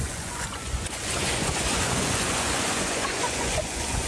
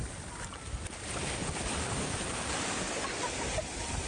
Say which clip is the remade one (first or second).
first